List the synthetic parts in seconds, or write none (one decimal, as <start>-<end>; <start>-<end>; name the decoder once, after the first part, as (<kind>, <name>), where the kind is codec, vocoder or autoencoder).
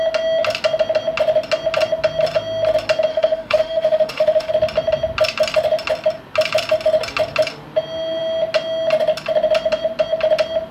3.1-4.5 (autoencoder, DAC-VAE)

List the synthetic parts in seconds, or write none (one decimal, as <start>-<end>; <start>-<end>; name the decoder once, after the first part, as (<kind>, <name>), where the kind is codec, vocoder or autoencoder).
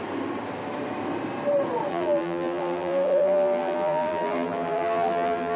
1.9-5.6 (vocoder, BigVGAN v2)